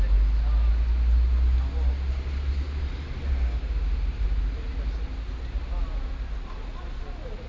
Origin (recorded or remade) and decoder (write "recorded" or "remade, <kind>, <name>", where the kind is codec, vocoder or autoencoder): recorded